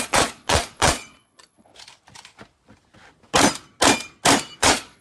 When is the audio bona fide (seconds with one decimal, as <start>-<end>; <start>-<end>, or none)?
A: 1.7-4.6